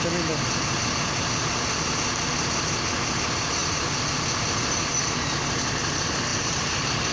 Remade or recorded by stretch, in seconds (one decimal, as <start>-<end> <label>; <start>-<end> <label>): 0.0-6.3 recorded; 6.3-7.1 remade